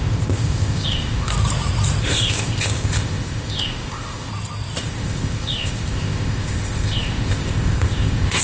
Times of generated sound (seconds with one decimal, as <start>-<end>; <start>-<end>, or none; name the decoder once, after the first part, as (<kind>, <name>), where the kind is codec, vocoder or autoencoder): 0.0-1.3 (codec, ZipCodec); 2.0-4.3; 4.8-8.4